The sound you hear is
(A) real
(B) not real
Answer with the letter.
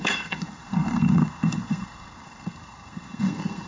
B